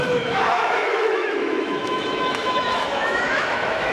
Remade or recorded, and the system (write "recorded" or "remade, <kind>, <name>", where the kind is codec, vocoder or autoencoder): remade, autoencoder, DAC-VAE